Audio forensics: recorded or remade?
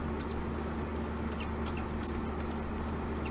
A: recorded